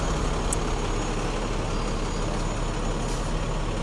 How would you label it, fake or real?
real